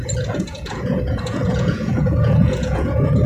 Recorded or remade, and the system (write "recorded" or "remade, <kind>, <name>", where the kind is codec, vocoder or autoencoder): remade, vocoder, Vocos